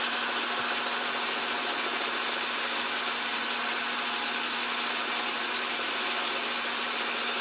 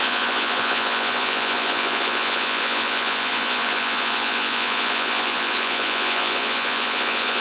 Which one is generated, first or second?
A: second